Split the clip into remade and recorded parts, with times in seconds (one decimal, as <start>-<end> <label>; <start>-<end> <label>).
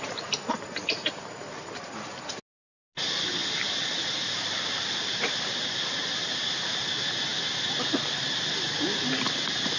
0.0-3.4 recorded; 3.4-5.9 remade; 5.9-9.8 recorded